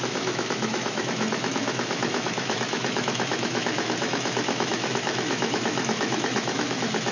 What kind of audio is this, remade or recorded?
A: remade